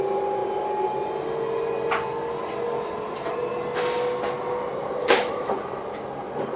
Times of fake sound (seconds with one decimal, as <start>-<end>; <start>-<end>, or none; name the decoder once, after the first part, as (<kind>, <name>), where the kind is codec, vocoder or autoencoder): 5.0-5.5 (autoencoder, DAC-VAE)